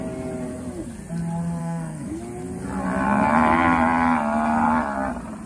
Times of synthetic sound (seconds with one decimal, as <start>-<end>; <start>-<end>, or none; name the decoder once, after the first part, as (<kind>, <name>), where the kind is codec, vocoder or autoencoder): 1.6-2.2 (codec, SNAC)